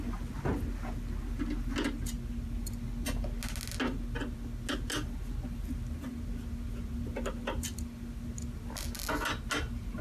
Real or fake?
real